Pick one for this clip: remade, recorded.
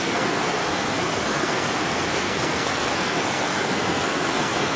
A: remade